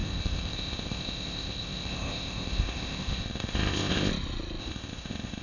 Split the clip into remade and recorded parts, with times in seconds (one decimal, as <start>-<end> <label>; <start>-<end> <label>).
0.0-4.1 remade; 4.1-4.6 recorded; 4.6-5.4 remade